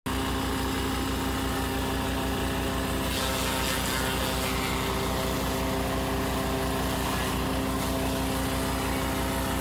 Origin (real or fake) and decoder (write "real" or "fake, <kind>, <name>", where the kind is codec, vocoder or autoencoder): real